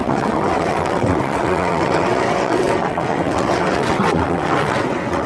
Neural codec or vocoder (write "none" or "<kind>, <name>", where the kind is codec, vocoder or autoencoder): vocoder, WaveNeXt